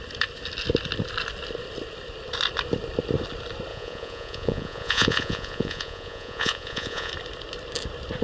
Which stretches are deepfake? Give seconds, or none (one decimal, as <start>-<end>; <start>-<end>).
3.7-7.1